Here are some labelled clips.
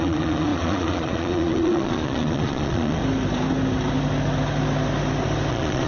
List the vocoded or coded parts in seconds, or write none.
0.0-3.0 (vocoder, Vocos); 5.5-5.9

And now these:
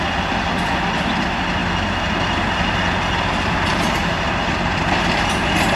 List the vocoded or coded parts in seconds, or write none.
none

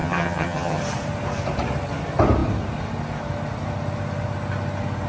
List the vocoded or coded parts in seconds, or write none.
0.0-0.8 (vocoder, HiFi-GAN)

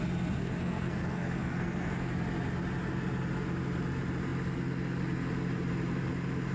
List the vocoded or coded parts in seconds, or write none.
0.4-2.1 (codec, SNAC)